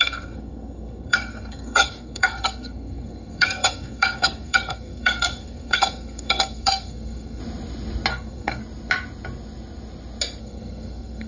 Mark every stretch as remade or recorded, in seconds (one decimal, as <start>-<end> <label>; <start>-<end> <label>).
0.0-7.4 remade; 7.4-8.1 recorded; 8.1-8.6 remade; 8.6-10.4 recorded; 10.4-11.3 remade